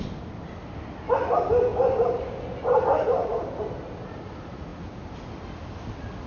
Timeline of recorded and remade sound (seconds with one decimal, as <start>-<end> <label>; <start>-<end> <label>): 0.0-6.3 recorded